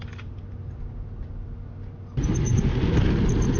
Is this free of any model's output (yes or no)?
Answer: yes